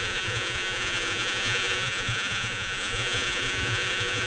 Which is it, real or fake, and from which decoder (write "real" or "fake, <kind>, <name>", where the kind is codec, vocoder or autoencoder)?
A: fake, vocoder, Vocos